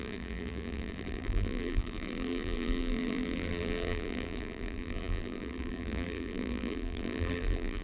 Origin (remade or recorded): remade